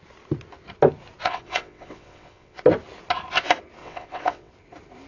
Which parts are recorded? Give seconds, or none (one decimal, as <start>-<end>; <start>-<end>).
0.0-1.2; 2.6-3.8; 4.5-5.1